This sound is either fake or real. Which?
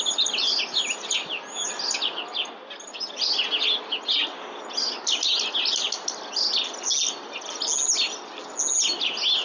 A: real